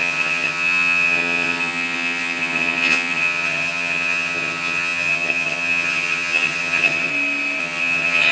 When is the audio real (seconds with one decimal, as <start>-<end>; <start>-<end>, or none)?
7.1-7.6